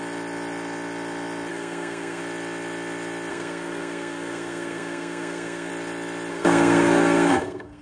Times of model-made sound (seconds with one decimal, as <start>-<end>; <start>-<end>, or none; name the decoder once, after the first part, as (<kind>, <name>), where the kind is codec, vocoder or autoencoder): 1.5-2.2 (codec, SNAC); 3.3-5.7; 6.3-7.8